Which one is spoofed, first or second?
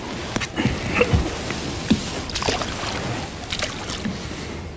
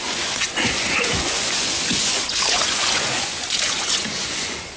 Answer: second